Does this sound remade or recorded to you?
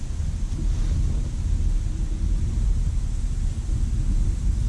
recorded